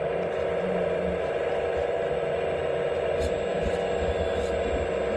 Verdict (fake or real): real